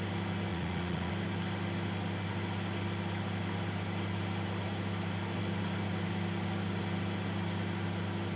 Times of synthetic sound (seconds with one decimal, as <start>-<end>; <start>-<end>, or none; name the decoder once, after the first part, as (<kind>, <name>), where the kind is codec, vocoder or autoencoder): 0.5-1.1 (vocoder, Vocos)